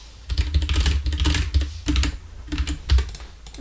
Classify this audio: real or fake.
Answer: real